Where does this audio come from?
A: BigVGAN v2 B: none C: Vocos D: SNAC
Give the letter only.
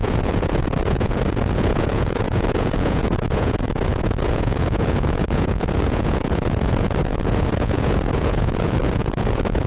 C